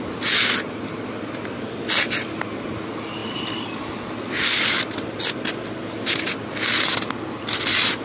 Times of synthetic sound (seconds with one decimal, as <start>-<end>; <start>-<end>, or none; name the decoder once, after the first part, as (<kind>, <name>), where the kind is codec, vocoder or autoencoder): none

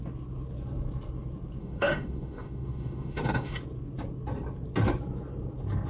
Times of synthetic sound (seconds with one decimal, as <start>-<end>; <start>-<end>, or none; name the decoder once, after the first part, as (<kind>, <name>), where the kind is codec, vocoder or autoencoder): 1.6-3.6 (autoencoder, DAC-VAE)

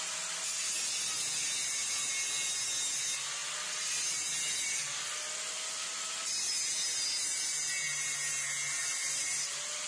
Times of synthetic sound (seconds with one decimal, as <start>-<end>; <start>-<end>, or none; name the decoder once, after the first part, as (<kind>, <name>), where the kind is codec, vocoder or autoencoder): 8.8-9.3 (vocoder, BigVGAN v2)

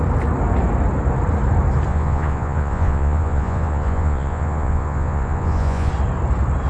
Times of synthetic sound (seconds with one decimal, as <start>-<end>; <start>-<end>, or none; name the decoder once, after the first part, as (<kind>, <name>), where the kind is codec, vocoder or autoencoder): 1.9-5.9 (vocoder, Vocos)

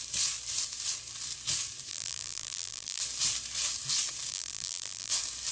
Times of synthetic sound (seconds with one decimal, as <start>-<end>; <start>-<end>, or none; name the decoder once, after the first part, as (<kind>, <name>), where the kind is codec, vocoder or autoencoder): 1.9-3.0 (vocoder, BigVGAN v2); 4.3-5.1

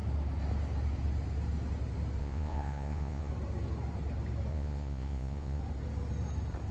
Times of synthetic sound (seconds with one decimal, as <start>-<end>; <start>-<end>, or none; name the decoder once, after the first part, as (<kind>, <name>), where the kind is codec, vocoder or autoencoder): 2.2-3.3 (vocoder, Vocos); 4.5-5.6

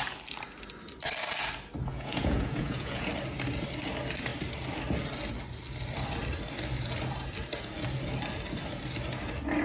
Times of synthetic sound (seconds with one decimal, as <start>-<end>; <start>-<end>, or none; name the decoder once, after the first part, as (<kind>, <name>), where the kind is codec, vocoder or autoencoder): 1.9-3.1 (vocoder, Vocos)

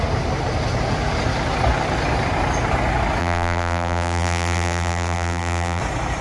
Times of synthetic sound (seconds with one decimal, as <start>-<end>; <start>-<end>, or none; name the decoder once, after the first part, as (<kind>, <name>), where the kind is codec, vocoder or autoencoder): 3.2-5.8 (vocoder, BigVGAN v2)